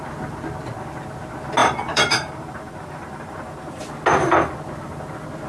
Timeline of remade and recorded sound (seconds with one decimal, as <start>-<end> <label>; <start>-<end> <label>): 0.0-1.6 recorded; 1.6-3.8 remade; 3.8-5.5 recorded